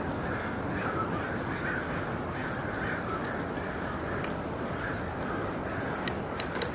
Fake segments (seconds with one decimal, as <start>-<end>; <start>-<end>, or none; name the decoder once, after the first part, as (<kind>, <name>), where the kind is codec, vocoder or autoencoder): 2.4-6.7 (vocoder, BigVGAN v2)

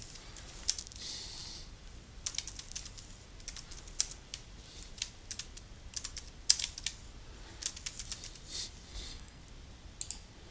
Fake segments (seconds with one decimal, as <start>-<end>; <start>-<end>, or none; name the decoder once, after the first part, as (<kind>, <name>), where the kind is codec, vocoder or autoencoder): 8.9-9.4 (codec, SNAC)

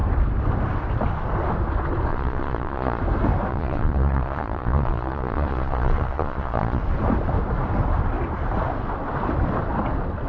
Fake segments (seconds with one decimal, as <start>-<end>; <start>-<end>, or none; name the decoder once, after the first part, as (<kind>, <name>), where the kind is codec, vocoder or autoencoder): 2.1-3.0 (vocoder, Vocos); 3.5-6.8

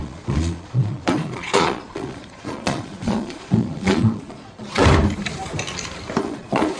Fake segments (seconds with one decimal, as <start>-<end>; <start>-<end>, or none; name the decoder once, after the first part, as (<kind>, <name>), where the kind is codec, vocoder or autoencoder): 0.0-4.8 (vocoder, Vocos); 6.2-6.8

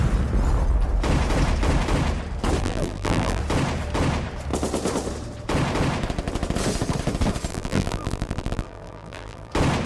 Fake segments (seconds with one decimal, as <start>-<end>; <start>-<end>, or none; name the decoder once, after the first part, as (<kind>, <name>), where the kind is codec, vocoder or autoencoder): 2.6-3.4 (vocoder, BigVGAN v2); 7.5-9.5

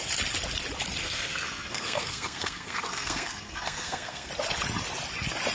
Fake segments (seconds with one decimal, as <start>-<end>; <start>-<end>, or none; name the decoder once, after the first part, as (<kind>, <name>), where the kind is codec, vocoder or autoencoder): 1.0-4.3 (codec, SNAC)

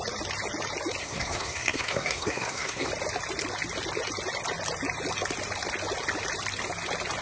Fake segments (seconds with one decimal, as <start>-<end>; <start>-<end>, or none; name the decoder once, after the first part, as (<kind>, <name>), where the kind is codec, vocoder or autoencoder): 1.0-2.9 (codec, SNAC)

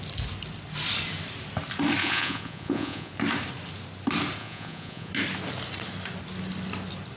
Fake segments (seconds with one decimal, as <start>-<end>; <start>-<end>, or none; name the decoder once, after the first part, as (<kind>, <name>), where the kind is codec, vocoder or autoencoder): 2.0-3.1 (vocoder, Vocos); 4.4-5.1